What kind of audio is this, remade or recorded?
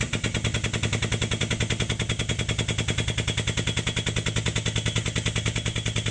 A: recorded